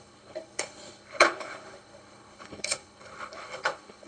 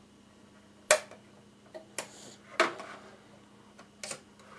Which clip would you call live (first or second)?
second